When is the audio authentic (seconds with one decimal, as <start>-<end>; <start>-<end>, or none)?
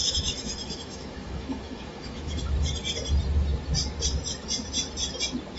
2.5-5.6